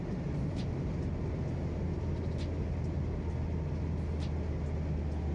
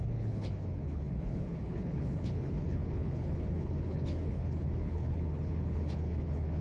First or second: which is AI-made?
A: second